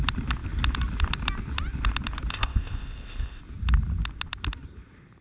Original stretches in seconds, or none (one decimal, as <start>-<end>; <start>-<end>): 0.0-2.3; 3.4-5.2